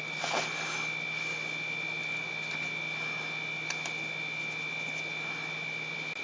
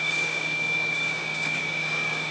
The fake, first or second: second